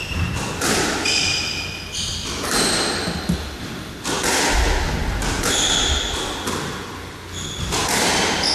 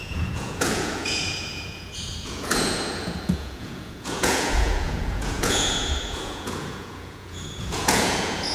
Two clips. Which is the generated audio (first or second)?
second